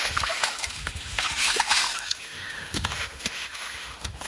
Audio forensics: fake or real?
fake